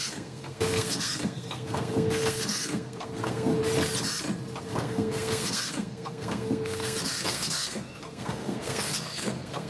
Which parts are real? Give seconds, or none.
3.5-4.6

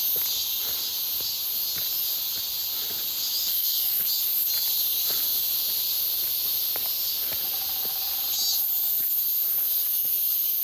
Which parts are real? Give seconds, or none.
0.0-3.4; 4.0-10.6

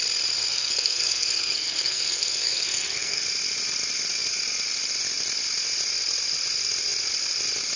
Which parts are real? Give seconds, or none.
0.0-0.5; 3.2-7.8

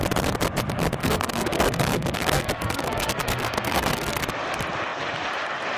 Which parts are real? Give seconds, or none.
0.0-1.0; 4.2-5.8

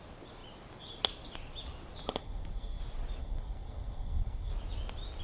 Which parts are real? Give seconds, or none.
0.0-2.2; 2.8-3.2; 4.5-5.2

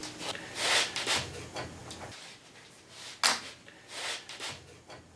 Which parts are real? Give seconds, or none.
0.0-5.2